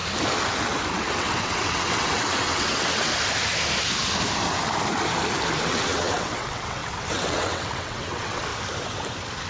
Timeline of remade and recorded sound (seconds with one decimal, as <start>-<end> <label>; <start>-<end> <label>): 0.0-0.9 recorded; 0.9-3.1 remade; 3.1-5.6 recorded; 5.6-8.5 remade; 8.5-9.5 recorded

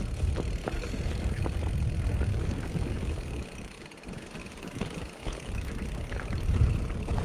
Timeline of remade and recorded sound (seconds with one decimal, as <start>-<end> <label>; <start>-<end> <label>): 0.0-0.6 recorded; 0.6-1.4 remade; 1.4-2.3 recorded; 2.3-3.8 remade; 3.8-4.4 recorded; 4.4-6.7 remade; 6.7-7.2 recorded

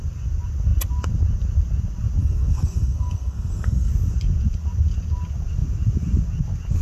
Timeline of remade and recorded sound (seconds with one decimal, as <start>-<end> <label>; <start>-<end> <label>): 0.0-2.2 recorded; 2.2-3.9 remade; 3.9-6.8 recorded

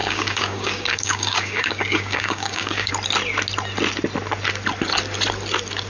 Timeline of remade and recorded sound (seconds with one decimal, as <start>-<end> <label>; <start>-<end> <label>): 0.0-2.9 remade; 2.9-5.9 recorded

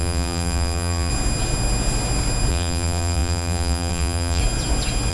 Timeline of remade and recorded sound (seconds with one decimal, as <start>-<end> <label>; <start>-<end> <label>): 0.0-1.1 remade; 1.1-2.5 recorded; 2.5-4.4 remade; 4.4-5.1 recorded

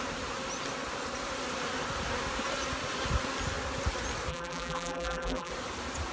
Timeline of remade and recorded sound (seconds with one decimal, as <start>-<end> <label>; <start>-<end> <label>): 0.0-4.3 recorded; 4.3-5.5 remade; 5.5-6.1 recorded